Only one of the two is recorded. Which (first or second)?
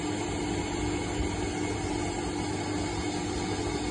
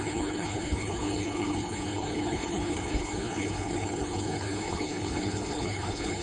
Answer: first